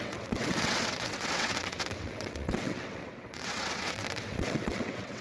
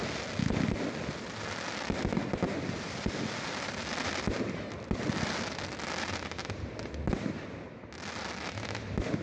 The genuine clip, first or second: second